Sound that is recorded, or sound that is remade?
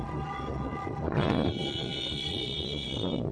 remade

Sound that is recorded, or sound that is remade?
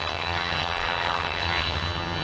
remade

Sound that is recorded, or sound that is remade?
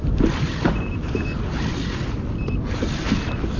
recorded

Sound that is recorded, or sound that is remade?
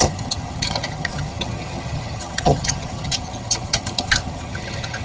remade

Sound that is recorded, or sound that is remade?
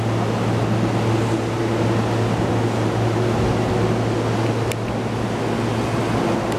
recorded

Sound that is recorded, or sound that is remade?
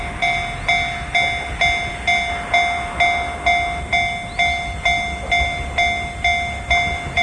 recorded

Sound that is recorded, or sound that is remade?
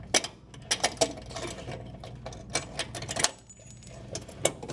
recorded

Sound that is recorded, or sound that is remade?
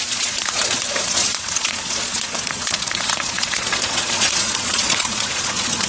remade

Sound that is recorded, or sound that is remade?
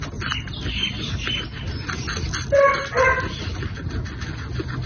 recorded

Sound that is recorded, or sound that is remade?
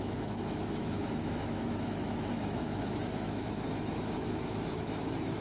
remade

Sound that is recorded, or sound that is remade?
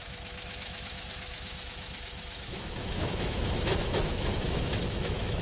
remade